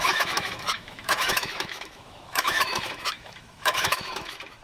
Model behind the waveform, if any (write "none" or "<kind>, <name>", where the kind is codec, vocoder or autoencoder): autoencoder, DAC-VAE